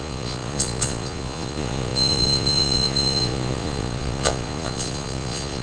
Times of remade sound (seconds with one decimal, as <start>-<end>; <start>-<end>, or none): 0.0-5.6